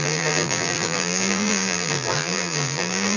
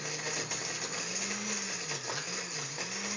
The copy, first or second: first